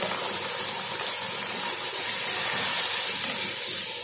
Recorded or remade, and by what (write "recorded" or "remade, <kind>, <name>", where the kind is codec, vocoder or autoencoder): recorded